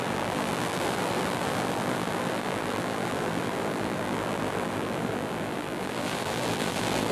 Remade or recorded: remade